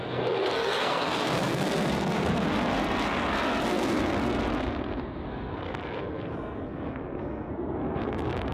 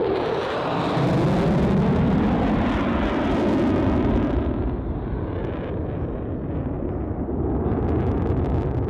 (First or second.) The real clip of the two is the second